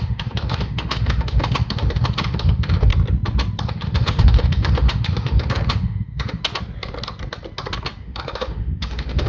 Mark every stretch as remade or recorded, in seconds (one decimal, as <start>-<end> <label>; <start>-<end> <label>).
0.0-2.9 remade; 2.9-3.7 recorded; 3.7-6.4 remade; 6.4-8.0 recorded; 8.0-9.3 remade